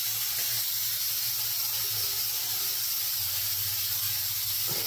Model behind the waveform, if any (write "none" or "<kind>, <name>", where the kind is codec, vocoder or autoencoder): none